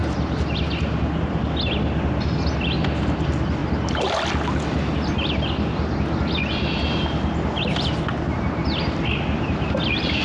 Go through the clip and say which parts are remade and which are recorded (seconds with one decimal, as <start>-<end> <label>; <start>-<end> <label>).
0.0-10.2 recorded